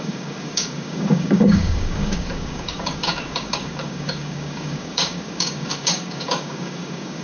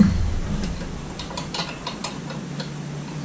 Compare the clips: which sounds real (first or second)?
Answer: second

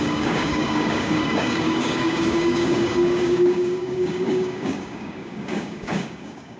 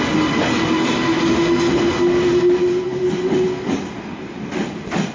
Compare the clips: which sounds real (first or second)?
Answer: second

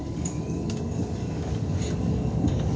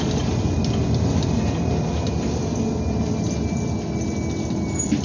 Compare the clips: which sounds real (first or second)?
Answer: second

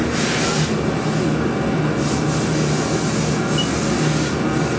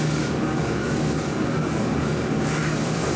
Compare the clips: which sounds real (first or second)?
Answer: first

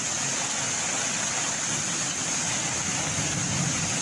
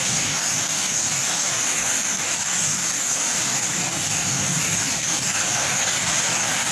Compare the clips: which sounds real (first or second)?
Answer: first